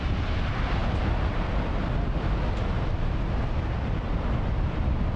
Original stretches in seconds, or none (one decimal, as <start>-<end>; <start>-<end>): 0.0-5.2